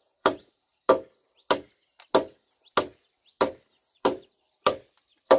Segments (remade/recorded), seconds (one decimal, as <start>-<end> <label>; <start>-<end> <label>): 0.0-0.7 remade; 0.7-3.9 recorded; 3.9-5.4 remade